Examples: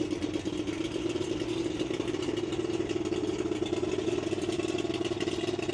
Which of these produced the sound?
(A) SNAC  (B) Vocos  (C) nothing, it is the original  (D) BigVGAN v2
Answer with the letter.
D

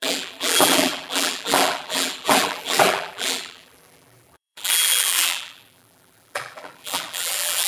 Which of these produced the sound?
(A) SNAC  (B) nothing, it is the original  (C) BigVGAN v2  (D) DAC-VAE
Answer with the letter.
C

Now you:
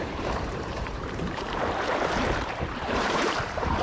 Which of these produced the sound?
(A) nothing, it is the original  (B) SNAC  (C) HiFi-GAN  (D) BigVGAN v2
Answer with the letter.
D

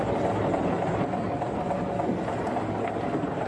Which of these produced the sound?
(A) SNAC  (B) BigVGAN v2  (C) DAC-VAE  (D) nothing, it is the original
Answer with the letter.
D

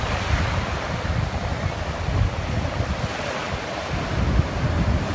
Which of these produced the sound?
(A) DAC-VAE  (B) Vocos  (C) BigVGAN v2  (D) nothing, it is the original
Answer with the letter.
D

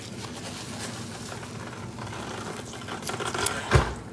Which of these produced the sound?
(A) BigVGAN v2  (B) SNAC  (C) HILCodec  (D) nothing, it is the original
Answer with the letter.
D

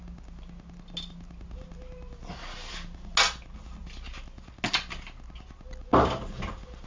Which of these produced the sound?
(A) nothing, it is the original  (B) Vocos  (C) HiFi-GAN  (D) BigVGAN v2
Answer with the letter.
A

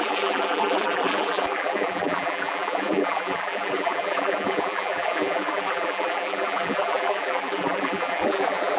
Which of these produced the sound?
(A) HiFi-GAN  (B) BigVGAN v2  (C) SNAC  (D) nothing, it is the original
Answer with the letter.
B